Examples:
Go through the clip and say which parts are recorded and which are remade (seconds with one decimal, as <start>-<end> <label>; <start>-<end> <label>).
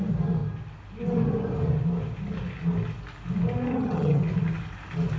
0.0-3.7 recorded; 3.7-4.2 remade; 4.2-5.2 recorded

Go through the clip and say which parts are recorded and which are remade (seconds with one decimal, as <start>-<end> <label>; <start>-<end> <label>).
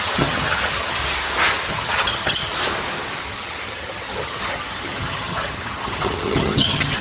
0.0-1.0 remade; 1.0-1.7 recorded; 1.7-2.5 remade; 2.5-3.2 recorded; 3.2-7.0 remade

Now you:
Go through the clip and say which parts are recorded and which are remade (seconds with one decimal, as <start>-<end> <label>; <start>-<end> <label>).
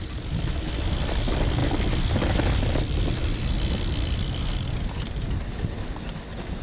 0.0-6.6 recorded